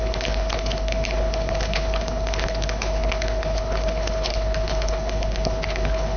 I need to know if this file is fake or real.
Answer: fake